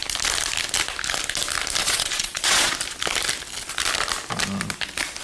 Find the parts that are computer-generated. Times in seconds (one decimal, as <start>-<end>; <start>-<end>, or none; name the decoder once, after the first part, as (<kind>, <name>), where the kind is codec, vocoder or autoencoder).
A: 1.8-2.7 (vocoder, Vocos)